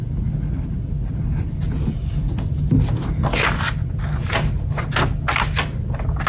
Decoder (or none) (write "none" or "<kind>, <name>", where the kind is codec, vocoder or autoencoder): none